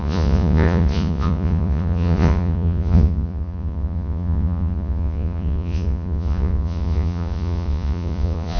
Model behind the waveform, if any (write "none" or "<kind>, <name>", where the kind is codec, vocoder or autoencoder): vocoder, Vocos